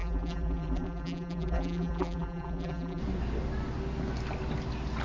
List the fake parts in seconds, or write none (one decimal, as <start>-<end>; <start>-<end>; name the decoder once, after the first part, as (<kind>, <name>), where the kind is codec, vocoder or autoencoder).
0.0-3.0 (vocoder, BigVGAN v2)